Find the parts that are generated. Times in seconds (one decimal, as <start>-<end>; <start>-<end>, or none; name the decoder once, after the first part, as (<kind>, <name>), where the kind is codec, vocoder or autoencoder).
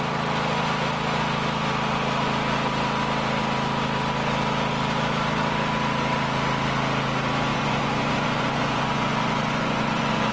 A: 7.5-10.3 (vocoder, Vocos)